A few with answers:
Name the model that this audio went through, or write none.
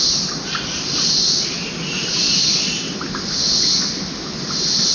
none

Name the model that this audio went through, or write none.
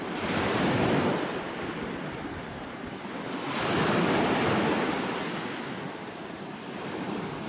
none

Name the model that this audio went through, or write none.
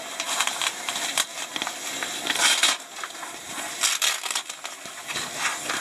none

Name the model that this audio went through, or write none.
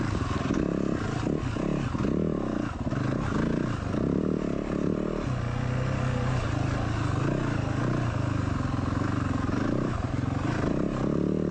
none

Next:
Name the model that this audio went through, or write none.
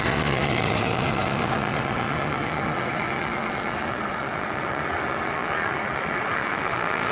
vocoder, Vocos